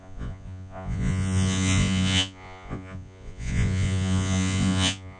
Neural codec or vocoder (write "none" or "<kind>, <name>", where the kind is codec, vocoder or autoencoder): vocoder, Vocos